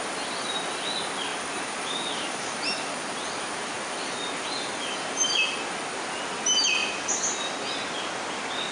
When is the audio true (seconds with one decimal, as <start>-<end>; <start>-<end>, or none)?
0.0-1.3; 5.5-8.7